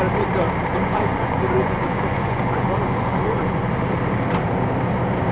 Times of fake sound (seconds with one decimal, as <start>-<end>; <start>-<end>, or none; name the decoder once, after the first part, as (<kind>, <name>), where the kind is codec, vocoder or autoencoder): 0.7-3.7 (vocoder, Vocos)